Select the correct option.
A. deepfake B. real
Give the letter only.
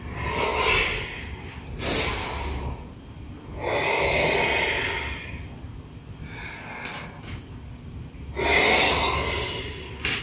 B